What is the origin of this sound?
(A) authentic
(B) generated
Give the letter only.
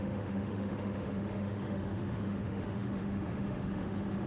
B